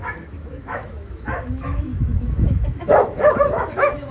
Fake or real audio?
fake